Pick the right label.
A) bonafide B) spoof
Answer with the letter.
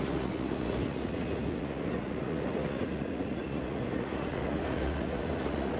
B